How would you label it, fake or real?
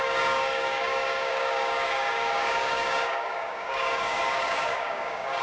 fake